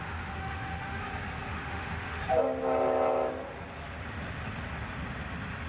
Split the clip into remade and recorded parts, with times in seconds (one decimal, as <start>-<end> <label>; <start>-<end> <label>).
0.0-1.0 remade; 1.0-1.5 recorded; 1.5-2.2 remade; 2.2-5.7 recorded